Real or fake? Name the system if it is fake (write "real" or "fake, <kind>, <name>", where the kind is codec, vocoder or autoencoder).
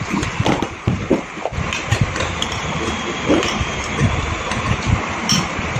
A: fake, vocoder, BigVGAN v2